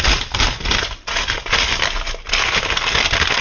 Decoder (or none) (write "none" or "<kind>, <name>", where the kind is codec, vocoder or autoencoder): none